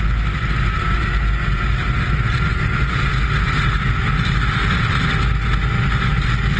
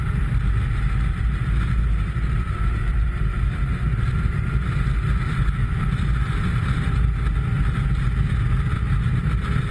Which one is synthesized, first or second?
second